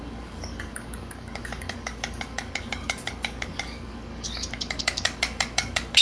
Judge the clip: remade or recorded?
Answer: remade